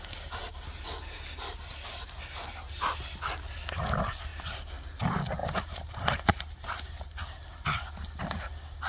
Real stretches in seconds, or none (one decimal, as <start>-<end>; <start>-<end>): 0.0-5.4; 7.5-8.9